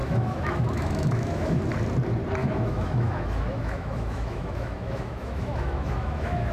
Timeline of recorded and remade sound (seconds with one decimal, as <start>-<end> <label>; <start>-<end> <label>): 0.0-1.6 remade; 1.6-2.4 recorded; 2.4-6.5 remade